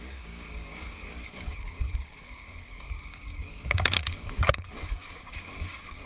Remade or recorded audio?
remade